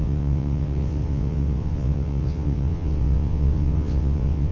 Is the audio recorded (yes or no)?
no